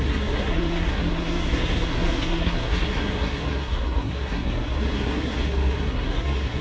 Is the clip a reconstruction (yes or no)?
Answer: yes